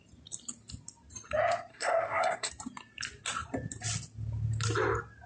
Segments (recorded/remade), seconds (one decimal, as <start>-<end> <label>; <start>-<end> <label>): 0.0-1.7 recorded; 1.7-2.5 remade; 2.5-5.3 recorded